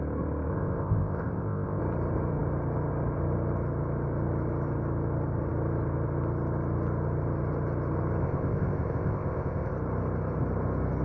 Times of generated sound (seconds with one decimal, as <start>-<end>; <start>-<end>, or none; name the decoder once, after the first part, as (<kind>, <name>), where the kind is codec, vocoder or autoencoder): 0.5-1.8 (codec, ZipCodec); 8.2-9.7